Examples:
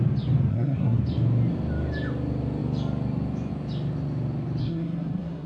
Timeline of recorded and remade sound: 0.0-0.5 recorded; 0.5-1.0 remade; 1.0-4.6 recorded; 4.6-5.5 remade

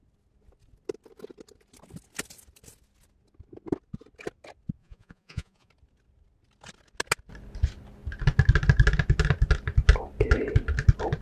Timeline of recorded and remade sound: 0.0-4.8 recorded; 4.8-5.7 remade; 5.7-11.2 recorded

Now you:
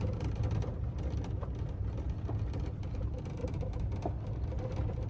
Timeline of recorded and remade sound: 0.0-3.4 recorded; 3.4-4.1 remade; 4.1-5.1 recorded